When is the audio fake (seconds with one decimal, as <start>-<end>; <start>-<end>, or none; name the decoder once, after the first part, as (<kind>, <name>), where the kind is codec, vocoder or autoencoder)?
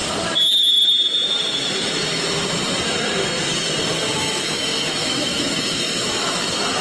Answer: 4.1-6.8 (autoencoder, DAC-VAE)